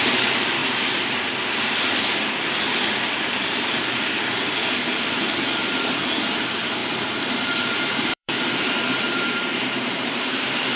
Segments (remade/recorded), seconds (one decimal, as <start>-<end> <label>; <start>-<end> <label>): 0.0-0.6 remade; 0.6-3.2 recorded; 3.2-10.8 remade